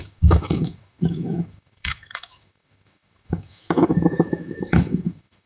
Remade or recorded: remade